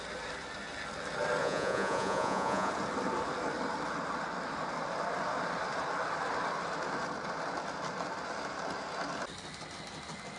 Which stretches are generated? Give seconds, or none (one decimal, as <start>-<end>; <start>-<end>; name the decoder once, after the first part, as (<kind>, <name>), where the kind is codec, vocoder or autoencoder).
1.4-2.7 (vocoder, Vocos)